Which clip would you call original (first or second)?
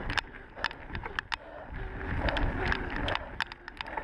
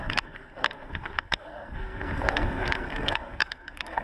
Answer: first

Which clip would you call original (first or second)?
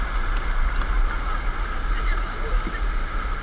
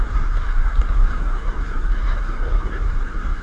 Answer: first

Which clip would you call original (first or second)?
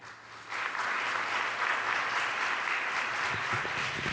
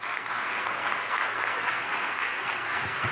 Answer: first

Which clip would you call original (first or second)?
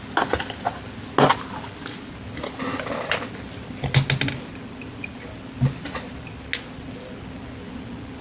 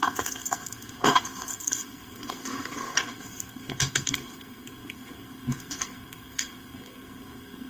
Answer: first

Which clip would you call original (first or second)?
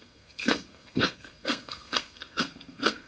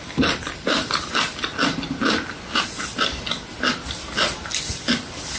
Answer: second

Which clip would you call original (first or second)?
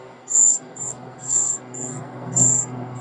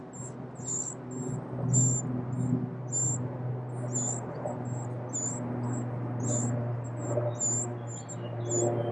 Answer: second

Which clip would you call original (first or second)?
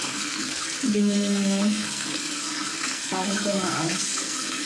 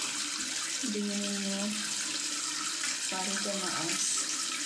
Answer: second